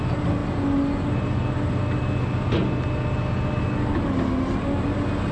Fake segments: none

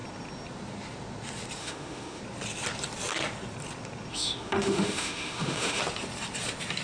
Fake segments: 1.6-2.2 (autoencoder, DAC-VAE); 4.1-5.8

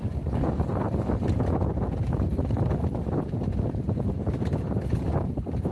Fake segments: none

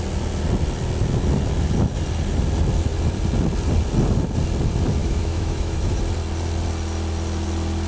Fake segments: 5.0-6.0 (autoencoder, DAC-VAE)